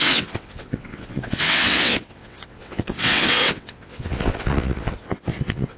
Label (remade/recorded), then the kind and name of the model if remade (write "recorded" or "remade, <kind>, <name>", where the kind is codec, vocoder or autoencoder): remade, vocoder, WaveNeXt